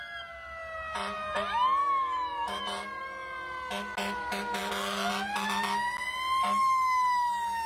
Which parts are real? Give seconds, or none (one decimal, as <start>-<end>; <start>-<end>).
0.0-1.8; 2.6-7.7

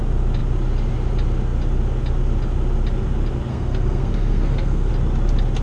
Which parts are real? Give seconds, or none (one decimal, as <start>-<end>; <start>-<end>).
0.0-3.5; 4.9-5.6

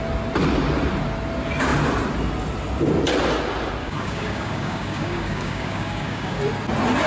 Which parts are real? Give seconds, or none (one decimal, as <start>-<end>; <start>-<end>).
0.0-3.8; 6.4-7.1